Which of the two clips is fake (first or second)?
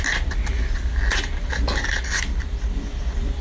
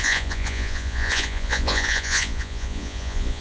second